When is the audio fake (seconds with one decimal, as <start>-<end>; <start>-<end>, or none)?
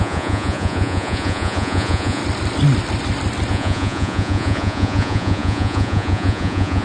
0.0-2.2; 3.5-6.8